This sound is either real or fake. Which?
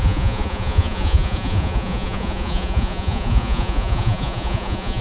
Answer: fake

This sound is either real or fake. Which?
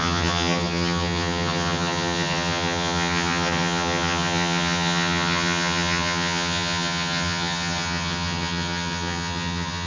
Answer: fake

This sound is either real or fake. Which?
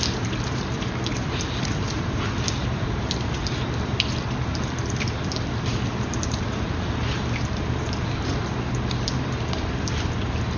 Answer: fake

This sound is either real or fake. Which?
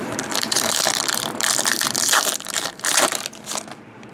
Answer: fake